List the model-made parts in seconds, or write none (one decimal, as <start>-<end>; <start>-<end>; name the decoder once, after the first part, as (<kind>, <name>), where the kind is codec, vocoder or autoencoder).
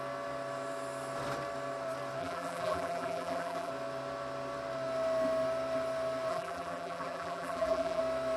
2.2-3.7 (vocoder, BigVGAN v2); 6.3-8.0